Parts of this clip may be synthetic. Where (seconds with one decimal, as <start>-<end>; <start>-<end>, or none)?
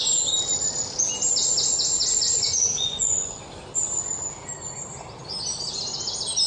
2.0-3.4